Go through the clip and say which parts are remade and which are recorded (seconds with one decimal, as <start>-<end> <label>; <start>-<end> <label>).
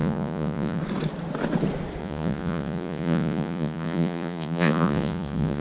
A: 0.0-0.8 remade; 0.8-2.0 recorded; 2.0-5.6 remade